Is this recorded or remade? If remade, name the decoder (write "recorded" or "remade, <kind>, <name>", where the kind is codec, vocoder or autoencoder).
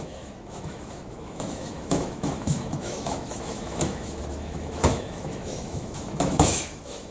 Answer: remade, autoencoder, DAC-VAE